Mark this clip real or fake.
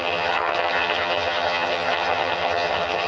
fake